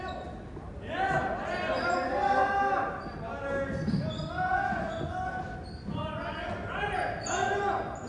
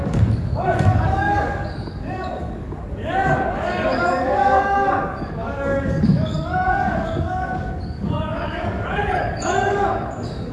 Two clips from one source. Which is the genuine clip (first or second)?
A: first